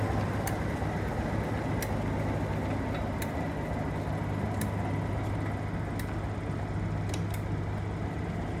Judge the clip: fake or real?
real